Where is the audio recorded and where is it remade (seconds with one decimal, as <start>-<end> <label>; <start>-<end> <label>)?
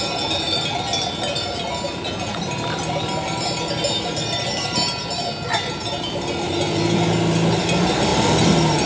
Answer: 0.0-8.9 recorded